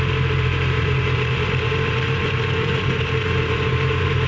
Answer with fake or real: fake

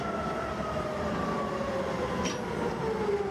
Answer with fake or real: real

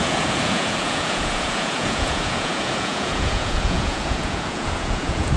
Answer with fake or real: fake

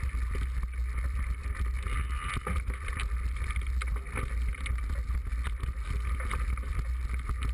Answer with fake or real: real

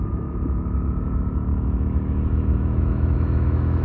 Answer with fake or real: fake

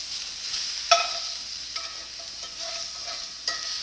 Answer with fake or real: real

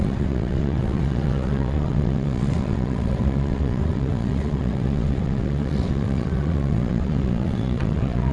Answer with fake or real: fake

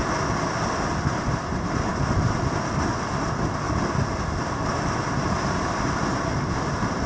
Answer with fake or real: real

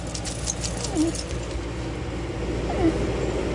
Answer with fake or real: real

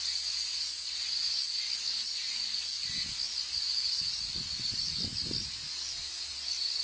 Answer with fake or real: real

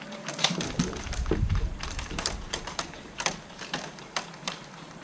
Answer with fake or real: fake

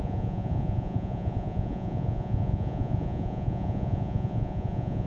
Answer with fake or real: fake